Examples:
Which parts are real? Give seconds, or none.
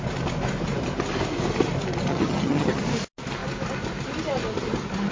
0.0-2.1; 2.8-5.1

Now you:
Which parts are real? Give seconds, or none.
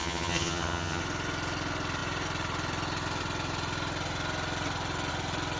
1.0-5.6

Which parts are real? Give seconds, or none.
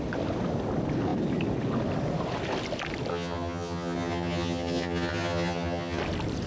0.0-3.1; 6.0-6.5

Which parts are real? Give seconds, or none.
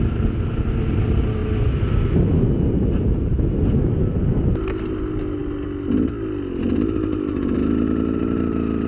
0.0-8.9